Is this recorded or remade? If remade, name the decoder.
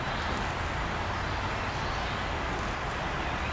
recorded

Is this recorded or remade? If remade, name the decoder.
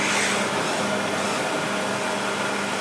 recorded